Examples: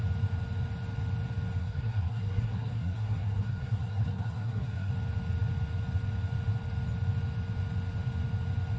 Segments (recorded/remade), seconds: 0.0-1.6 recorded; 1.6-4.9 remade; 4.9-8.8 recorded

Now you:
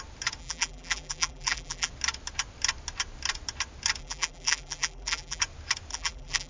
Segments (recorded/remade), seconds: 0.0-0.4 recorded; 0.4-1.9 remade; 1.9-4.0 recorded; 4.0-5.4 remade; 5.4-5.9 recorded; 5.9-6.5 remade

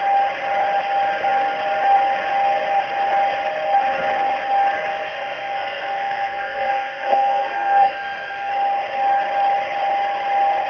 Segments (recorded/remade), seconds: 0.0-4.9 recorded; 4.9-8.5 remade; 8.5-10.7 recorded

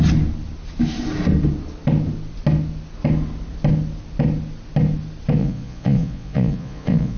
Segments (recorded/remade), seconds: 0.0-5.4 recorded; 5.4-7.2 remade

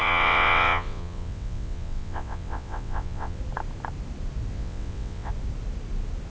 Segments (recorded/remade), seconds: 0.0-3.4 remade; 3.4-4.5 recorded; 4.5-5.3 remade; 5.3-6.3 recorded

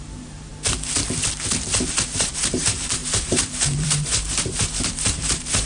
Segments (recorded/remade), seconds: 0.0-0.5 remade; 0.5-1.9 recorded; 1.9-5.7 remade